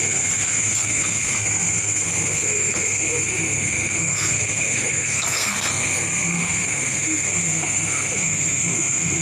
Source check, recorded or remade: remade